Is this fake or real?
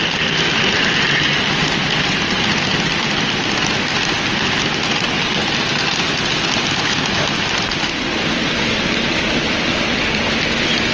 real